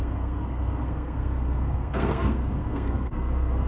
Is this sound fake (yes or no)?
yes